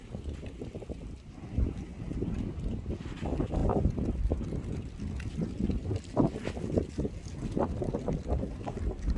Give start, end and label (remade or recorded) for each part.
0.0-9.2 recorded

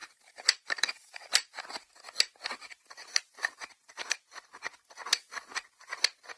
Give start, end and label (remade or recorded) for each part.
0.0-1.6 remade; 1.6-2.8 recorded; 2.8-5.5 remade; 5.5-6.4 recorded

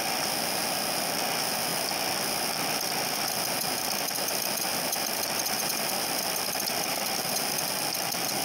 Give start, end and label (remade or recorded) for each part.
0.0-4.7 recorded; 4.7-7.4 remade; 7.4-8.4 recorded